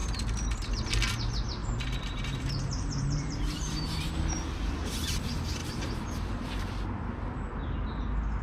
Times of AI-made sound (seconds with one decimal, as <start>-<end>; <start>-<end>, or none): 1.6-4.0; 5.6-6.7